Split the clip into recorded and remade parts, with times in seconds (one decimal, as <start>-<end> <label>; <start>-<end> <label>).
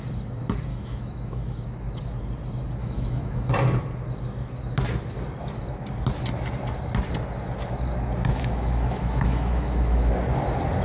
0.0-0.7 recorded; 0.7-1.6 remade; 1.6-2.8 recorded; 2.8-3.5 remade; 3.5-8.3 recorded; 8.3-10.1 remade; 10.1-10.8 recorded